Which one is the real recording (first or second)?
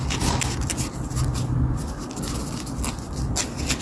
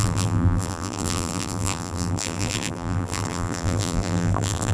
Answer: first